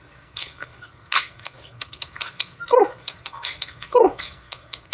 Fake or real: fake